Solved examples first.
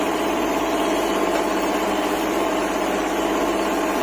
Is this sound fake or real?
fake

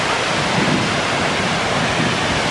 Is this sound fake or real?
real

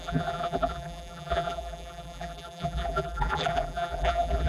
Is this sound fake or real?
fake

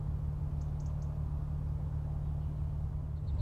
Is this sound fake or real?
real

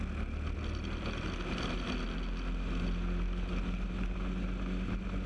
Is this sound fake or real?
real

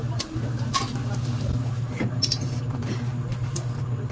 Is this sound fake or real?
fake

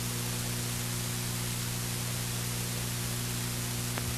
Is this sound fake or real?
real